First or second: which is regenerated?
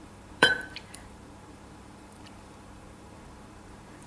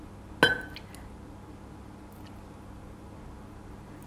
first